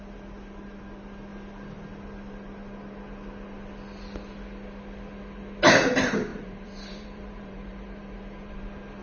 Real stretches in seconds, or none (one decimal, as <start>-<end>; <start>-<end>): 0.0-6.3; 8.6-9.0